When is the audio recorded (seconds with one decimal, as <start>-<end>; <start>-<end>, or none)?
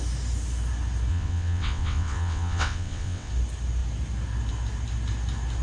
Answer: 0.0-1.1; 3.3-5.6